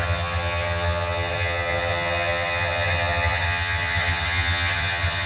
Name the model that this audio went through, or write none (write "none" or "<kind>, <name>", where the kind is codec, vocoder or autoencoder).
vocoder, HiFi-GAN